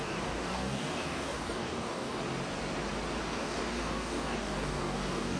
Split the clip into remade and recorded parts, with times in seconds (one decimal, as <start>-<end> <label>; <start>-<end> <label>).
0.0-2.2 remade; 2.2-3.2 recorded; 3.2-5.4 remade